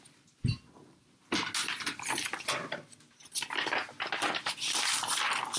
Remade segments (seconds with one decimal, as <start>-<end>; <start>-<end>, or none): none